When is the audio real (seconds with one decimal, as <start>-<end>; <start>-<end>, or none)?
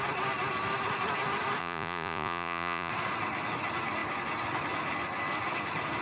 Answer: 0.0-1.6; 2.9-6.0